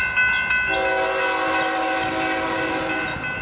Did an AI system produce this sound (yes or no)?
no